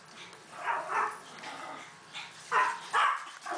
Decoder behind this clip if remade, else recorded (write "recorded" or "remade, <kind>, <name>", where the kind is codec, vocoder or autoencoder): recorded